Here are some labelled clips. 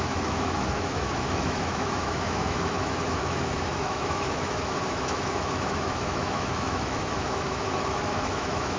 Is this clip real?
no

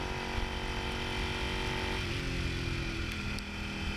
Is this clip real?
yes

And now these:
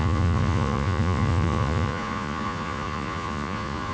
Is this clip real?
no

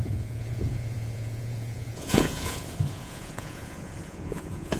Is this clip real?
no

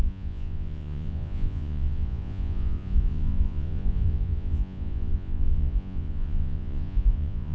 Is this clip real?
no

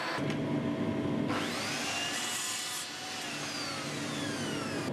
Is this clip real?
yes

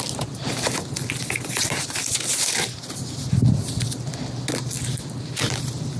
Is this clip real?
yes